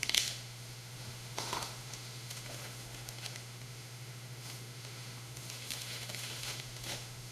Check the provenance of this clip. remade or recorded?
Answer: remade